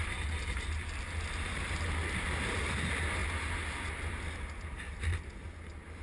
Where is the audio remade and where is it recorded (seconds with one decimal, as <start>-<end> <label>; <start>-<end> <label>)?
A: 0.0-6.0 recorded